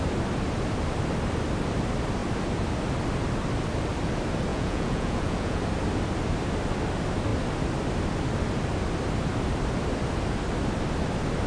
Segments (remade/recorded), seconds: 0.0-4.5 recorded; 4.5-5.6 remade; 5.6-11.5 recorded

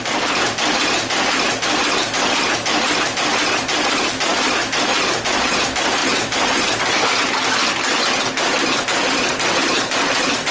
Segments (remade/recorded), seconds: 0.0-10.5 recorded